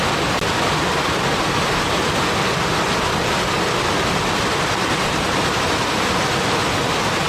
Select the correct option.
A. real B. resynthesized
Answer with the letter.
A